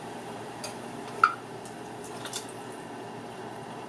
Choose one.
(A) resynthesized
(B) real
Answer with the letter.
B